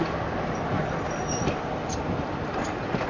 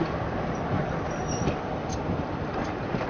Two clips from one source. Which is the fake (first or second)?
second